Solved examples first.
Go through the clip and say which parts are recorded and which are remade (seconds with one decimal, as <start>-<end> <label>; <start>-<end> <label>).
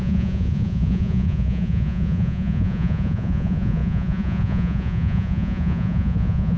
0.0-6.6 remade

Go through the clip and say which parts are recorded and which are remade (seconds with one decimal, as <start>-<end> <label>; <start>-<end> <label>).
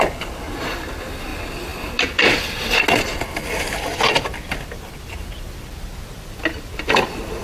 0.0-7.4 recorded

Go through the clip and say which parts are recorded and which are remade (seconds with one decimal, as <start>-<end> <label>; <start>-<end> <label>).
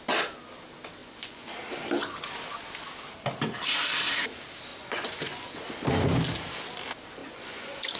0.0-1.0 recorded; 1.0-1.5 remade; 1.5-4.7 recorded; 4.7-5.6 remade; 5.6-7.2 recorded; 7.2-8.0 remade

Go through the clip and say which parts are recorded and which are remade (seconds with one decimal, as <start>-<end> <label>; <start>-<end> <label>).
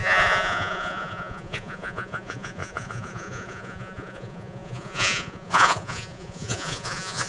0.0-7.3 remade